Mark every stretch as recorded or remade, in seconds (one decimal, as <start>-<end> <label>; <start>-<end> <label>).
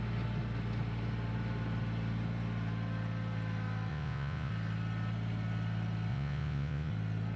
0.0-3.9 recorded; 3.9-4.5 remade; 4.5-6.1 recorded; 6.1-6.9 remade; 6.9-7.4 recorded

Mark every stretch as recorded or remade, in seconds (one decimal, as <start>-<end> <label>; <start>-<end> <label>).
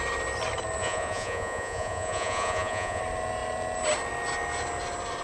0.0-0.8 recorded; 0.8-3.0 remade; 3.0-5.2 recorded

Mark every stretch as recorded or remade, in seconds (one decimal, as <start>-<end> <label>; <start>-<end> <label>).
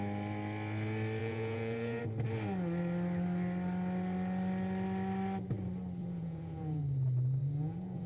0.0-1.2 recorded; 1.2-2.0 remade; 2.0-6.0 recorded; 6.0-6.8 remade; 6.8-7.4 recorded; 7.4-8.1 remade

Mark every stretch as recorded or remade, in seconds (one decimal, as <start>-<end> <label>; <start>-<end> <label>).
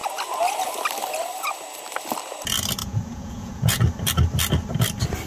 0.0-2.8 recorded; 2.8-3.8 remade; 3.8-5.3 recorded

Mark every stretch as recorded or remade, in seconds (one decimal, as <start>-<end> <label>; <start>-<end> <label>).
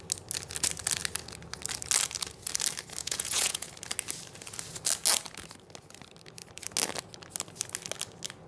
0.0-3.0 recorded; 3.0-3.7 remade; 3.7-8.5 recorded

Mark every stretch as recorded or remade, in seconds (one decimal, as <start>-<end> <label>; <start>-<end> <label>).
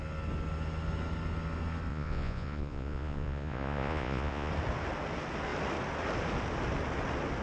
0.0-1.9 recorded; 1.9-4.5 remade; 4.5-7.4 recorded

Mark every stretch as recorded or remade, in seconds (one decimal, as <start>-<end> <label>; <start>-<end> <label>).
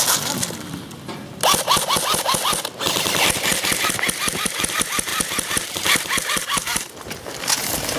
0.0-8.0 recorded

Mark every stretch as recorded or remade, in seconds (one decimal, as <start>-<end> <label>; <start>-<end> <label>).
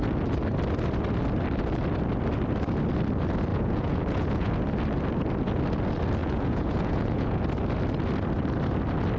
0.0-3.5 recorded; 3.5-4.5 remade; 4.5-6.2 recorded; 6.2-7.4 remade; 7.4-9.2 recorded